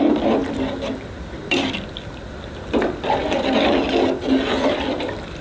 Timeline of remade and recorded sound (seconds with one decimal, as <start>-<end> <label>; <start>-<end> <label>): 0.0-0.4 recorded; 0.4-3.6 remade; 3.6-5.4 recorded